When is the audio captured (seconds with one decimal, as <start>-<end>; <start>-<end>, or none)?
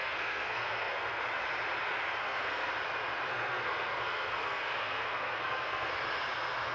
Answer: 1.2-2.2; 2.7-3.3; 5.9-6.7